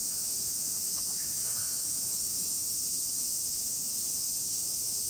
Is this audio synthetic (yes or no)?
yes